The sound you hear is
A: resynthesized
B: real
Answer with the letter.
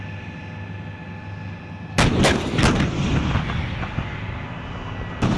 B